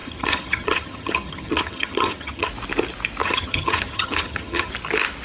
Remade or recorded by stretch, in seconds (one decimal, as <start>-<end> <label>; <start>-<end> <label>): 0.0-2.5 remade; 2.5-3.2 recorded; 3.2-4.7 remade; 4.7-5.2 recorded